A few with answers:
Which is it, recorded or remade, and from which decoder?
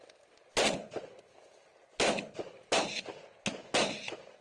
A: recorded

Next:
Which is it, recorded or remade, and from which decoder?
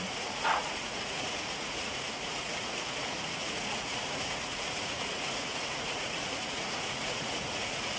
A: remade, vocoder, Vocos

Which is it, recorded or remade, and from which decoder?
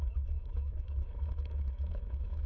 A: remade, autoencoder, DAC-VAE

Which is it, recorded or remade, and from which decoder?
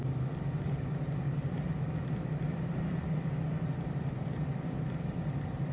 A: recorded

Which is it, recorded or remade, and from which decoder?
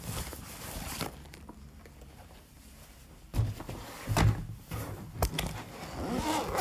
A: recorded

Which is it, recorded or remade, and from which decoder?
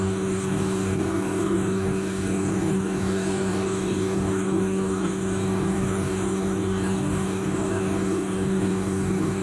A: remade, codec, DAC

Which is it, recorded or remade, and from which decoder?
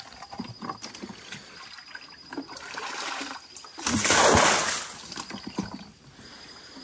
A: recorded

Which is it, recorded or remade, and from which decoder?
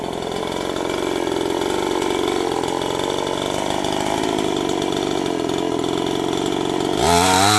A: recorded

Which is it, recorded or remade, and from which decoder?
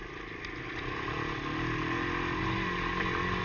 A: recorded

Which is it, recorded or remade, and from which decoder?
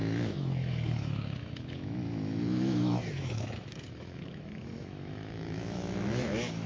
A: remade, autoencoder, DAC-VAE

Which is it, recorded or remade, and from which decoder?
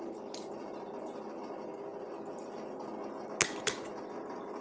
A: recorded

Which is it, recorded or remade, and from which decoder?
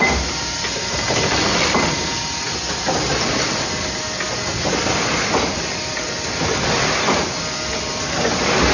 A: recorded